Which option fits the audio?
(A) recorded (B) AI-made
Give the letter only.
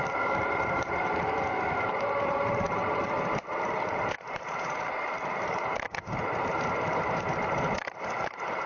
B